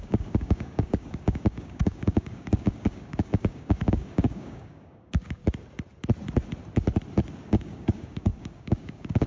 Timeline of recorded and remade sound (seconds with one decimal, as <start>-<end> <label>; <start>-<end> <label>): 0.0-5.4 remade; 5.4-7.4 recorded; 7.4-9.3 remade